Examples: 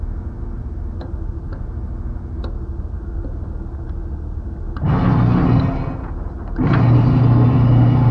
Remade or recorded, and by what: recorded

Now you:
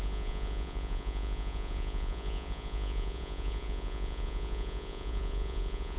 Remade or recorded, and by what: remade, vocoder, Vocos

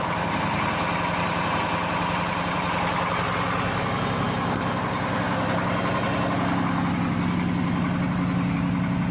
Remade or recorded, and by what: recorded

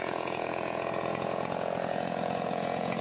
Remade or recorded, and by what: remade, vocoder, Vocos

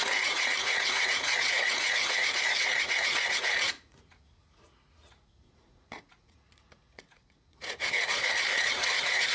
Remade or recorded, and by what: remade, vocoder, Vocos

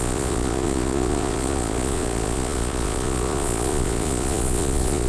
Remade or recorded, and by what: remade, vocoder, Vocos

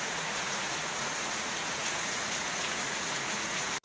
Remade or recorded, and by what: remade, vocoder, Vocos